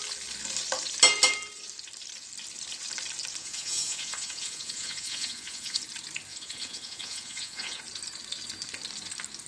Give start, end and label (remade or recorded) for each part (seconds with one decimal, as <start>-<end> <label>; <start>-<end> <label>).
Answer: 0.0-3.4 recorded; 3.4-5.8 remade; 5.8-6.3 recorded; 6.3-7.8 remade; 7.8-9.5 recorded